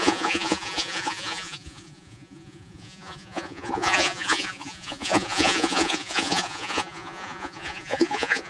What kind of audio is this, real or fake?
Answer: fake